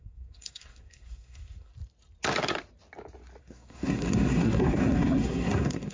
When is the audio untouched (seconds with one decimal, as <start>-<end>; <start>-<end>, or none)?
1.7-3.4